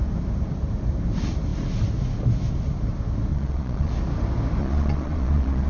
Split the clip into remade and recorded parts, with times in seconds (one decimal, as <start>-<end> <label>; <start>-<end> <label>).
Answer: 0.0-3.3 recorded; 3.3-3.9 remade; 3.9-4.6 recorded; 4.6-5.7 remade